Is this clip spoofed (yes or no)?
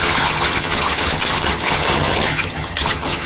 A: yes